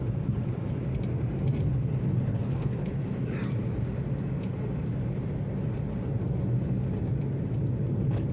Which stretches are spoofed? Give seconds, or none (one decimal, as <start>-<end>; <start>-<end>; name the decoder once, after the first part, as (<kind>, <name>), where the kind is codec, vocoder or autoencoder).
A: 2.3-2.9 (codec, HILCodec)